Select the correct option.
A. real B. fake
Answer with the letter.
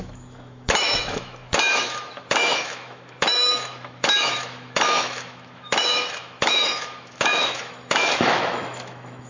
B